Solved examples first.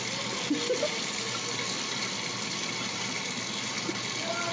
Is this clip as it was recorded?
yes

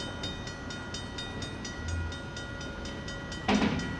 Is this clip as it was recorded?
yes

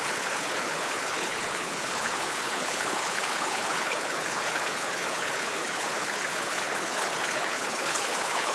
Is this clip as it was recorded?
no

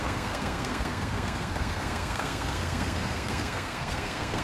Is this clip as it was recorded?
no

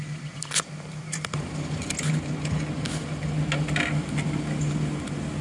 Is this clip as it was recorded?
yes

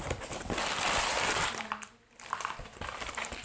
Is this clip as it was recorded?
yes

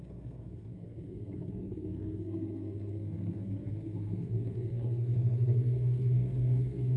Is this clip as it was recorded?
no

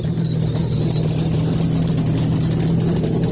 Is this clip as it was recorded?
yes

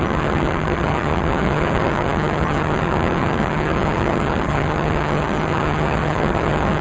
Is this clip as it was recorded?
no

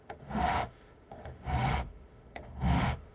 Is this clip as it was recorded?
no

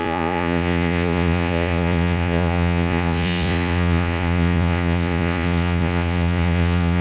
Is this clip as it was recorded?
no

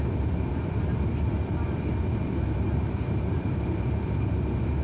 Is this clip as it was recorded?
no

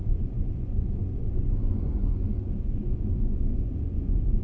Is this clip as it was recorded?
no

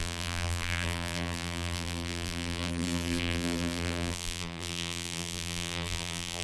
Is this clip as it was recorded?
no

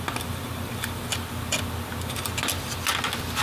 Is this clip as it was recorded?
yes